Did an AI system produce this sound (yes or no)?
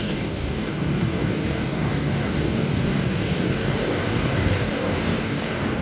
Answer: yes